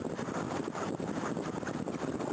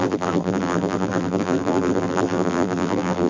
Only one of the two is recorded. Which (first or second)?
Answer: first